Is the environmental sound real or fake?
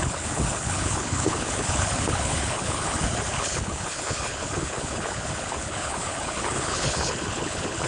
fake